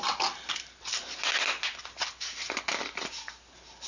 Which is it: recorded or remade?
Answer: recorded